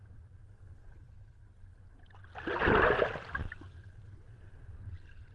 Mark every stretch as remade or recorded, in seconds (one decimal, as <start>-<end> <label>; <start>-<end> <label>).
0.0-5.3 recorded